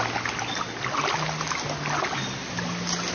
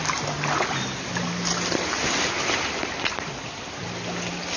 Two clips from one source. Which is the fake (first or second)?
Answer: second